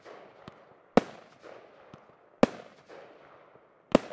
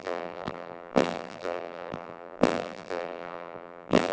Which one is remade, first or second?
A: second